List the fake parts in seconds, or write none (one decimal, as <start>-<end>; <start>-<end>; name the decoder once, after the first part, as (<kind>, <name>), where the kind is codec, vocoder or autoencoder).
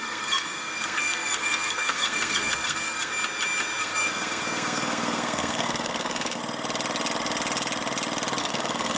0.0-3.1 (codec, SNAC); 3.8-6.4; 8.4-9.0